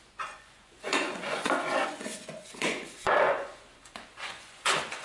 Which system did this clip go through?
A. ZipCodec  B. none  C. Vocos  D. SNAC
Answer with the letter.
C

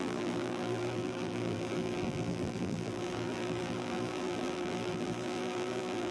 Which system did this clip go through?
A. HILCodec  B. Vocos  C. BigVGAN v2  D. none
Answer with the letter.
C